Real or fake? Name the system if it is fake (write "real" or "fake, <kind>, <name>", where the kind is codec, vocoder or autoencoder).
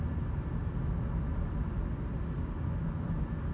real